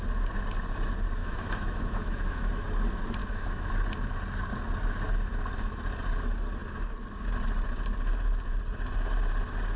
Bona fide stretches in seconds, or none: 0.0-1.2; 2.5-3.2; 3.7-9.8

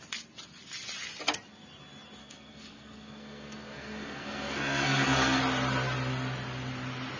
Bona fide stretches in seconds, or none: 0.0-2.2; 5.4-7.2

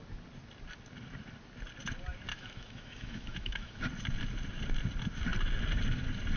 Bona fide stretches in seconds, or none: 0.0-2.3; 3.8-6.4